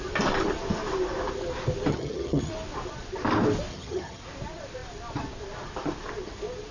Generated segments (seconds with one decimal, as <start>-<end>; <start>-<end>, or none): 1.9-2.5; 3.7-4.2